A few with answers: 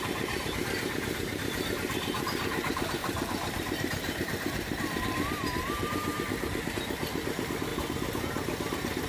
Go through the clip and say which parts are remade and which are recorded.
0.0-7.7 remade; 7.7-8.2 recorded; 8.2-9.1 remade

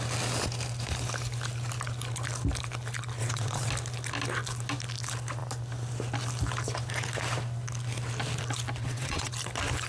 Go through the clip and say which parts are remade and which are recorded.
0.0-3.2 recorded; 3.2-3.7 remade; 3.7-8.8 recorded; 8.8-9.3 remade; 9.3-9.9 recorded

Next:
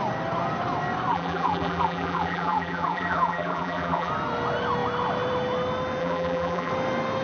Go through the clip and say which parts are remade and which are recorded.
0.0-1.1 recorded; 1.1-4.1 remade; 4.1-6.0 recorded; 6.0-6.7 remade; 6.7-7.2 recorded

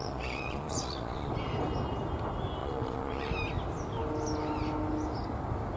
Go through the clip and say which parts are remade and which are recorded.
0.0-1.3 remade; 1.3-2.6 recorded; 2.6-3.3 remade; 3.3-5.8 recorded

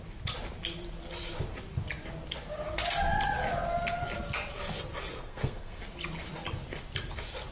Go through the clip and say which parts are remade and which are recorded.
0.0-5.1 recorded; 5.1-5.8 remade; 5.8-7.5 recorded

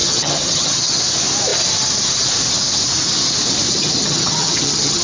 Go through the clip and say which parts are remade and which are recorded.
0.0-1.0 remade; 1.0-3.7 recorded; 3.7-5.0 remade

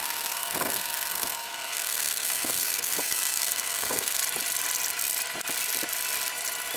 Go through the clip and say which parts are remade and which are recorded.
0.0-4.2 remade; 4.2-6.8 recorded

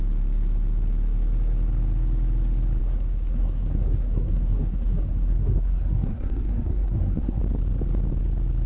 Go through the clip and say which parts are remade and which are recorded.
0.0-2.8 recorded; 2.8-7.4 remade; 7.4-8.7 recorded